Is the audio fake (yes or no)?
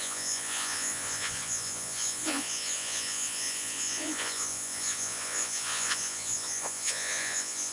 yes